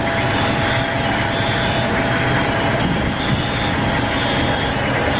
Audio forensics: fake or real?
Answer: real